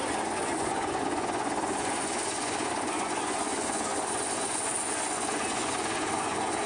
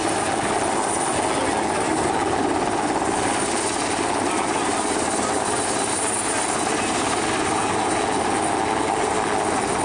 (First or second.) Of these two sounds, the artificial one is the first